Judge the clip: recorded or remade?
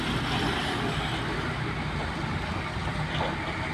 recorded